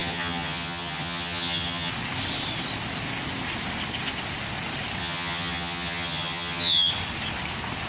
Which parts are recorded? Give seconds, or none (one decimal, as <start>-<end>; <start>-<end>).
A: 1.9-5.0; 6.9-7.9